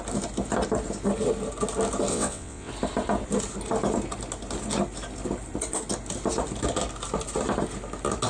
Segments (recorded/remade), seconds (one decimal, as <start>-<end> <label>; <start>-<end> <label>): 0.0-2.1 recorded; 2.1-2.7 remade; 2.7-8.3 recorded